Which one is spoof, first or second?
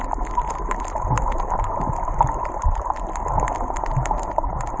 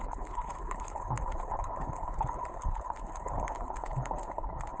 second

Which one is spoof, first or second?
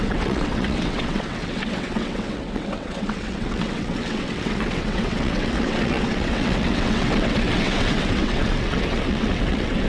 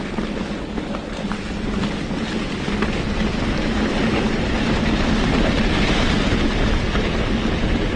first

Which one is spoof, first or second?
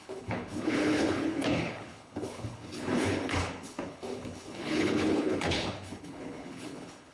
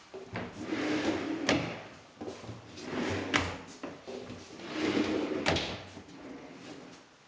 first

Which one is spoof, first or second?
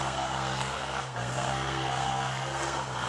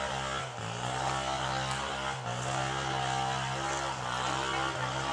first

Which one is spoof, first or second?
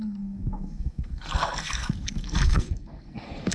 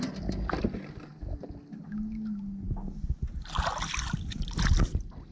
first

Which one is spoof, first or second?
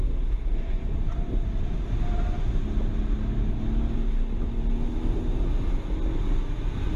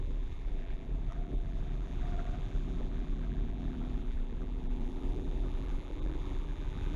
second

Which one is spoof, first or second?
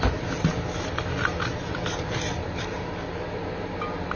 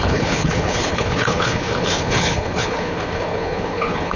second